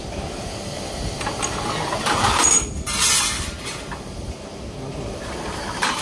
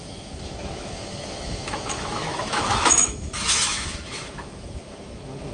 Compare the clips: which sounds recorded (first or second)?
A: first